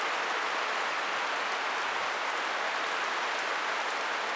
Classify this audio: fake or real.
real